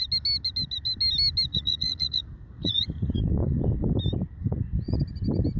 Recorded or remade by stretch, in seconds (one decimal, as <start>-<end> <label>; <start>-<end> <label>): 0.0-1.5 recorded; 1.5-3.6 remade; 3.6-4.4 recorded; 4.4-5.0 remade; 5.0-5.6 recorded